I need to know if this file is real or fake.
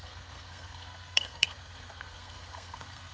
fake